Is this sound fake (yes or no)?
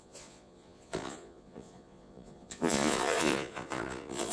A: yes